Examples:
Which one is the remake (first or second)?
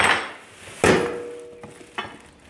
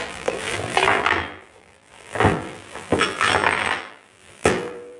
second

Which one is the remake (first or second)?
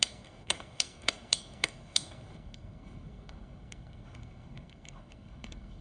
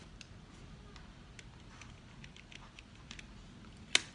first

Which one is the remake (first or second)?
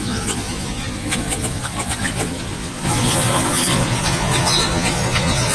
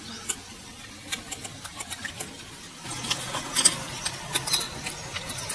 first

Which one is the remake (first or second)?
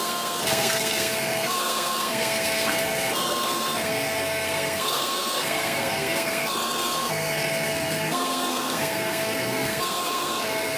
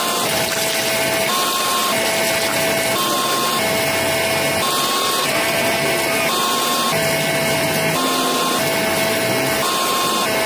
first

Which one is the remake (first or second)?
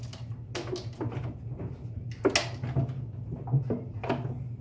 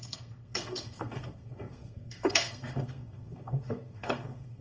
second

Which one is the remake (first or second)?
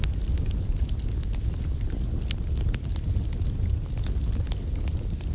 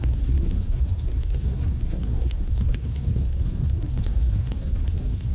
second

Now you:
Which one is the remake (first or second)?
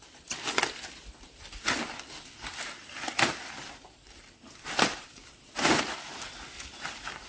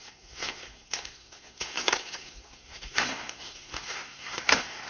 second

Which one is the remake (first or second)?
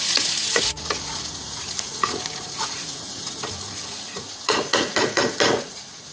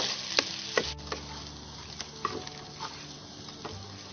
first